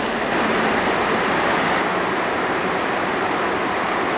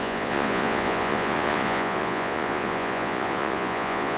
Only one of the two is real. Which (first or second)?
first